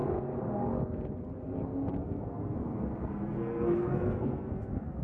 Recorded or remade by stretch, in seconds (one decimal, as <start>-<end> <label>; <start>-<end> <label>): 0.0-2.0 recorded; 2.0-5.0 remade